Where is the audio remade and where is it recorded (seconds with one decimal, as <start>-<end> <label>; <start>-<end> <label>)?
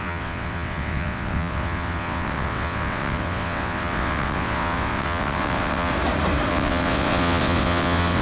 0.0-5.9 remade; 5.9-6.5 recorded; 6.5-8.2 remade